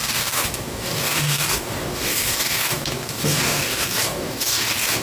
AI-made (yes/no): yes